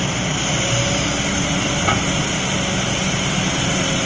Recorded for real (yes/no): yes